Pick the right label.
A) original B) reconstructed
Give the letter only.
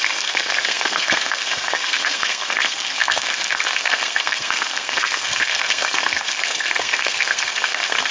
B